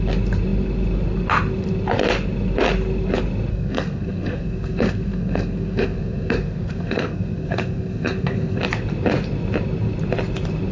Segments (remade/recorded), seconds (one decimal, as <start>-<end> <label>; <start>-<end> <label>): 0.0-3.5 recorded; 3.5-8.6 remade; 8.6-10.7 recorded